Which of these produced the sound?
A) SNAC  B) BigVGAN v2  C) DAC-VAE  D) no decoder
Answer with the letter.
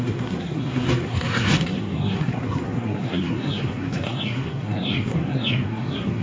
A